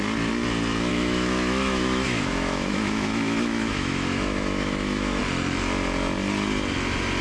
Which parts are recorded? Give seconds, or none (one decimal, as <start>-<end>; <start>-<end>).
0.0-0.9; 5.2-7.2